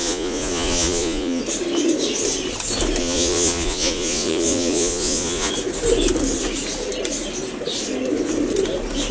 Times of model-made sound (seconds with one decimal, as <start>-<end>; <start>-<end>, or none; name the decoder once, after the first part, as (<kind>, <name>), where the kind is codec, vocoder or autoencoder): 0.0-1.4 (vocoder, Vocos); 3.0-5.5